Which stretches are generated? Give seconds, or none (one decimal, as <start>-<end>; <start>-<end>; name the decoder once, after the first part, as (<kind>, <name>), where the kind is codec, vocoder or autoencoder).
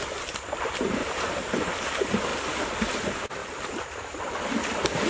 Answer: 1.0-1.6 (vocoder, BigVGAN v2); 3.4-4.2